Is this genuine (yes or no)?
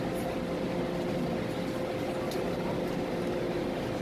yes